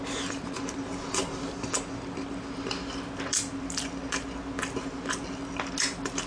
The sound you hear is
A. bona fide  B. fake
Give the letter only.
A